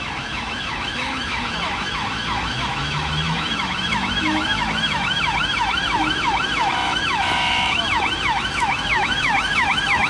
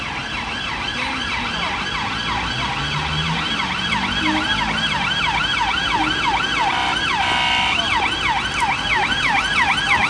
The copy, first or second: first